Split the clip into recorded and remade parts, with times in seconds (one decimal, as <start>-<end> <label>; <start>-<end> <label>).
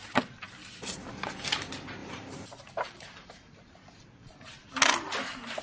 0.0-2.0 recorded; 2.0-4.7 remade; 4.7-5.6 recorded